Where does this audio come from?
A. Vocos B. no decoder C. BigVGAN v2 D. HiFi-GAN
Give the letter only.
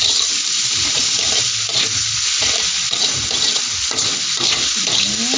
B